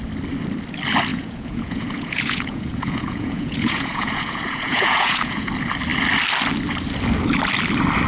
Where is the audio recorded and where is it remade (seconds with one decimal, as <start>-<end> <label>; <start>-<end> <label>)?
0.0-1.1 recorded; 1.1-5.5 remade; 5.5-8.1 recorded